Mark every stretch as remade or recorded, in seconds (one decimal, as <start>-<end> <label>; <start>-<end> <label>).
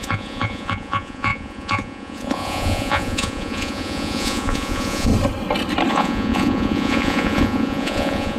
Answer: 0.0-5.1 remade; 5.1-5.9 recorded; 5.9-8.4 remade